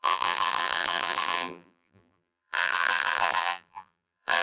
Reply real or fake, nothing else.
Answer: fake